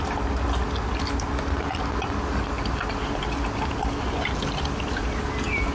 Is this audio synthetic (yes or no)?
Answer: no